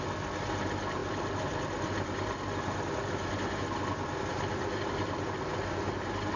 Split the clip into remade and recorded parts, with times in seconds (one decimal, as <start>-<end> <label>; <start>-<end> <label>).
0.0-6.4 recorded